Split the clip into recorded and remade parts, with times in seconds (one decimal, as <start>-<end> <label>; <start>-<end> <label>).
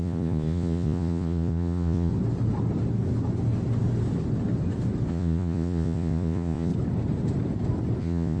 0.0-2.1 remade; 2.1-5.1 recorded; 5.1-6.7 remade; 6.7-8.0 recorded; 8.0-8.4 remade